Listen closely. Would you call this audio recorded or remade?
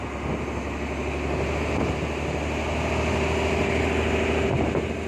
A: recorded